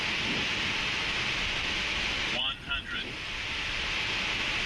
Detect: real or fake real